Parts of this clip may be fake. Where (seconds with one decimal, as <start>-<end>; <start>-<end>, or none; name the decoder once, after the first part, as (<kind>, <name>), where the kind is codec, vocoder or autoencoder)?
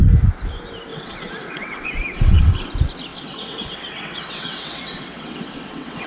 0.9-2.7 (vocoder, WaveNeXt); 3.1-6.1